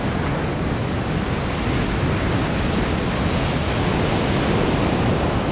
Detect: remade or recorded recorded